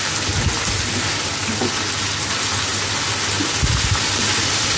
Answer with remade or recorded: recorded